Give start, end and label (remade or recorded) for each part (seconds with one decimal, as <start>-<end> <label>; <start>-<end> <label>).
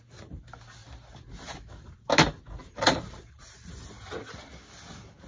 0.0-2.6 recorded; 2.6-3.7 remade; 3.7-5.3 recorded